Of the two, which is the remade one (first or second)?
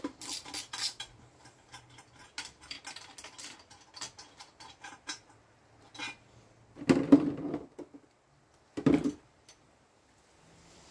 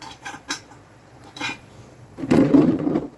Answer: second